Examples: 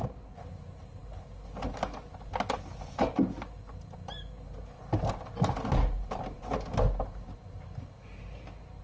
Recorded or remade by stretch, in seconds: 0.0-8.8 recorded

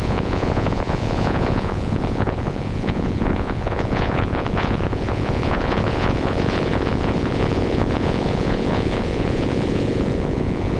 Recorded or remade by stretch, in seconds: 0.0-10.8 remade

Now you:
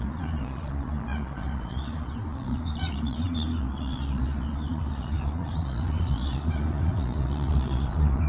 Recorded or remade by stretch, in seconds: 0.0-8.3 remade

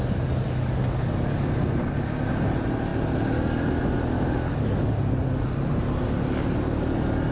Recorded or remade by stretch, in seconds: 0.0-7.3 recorded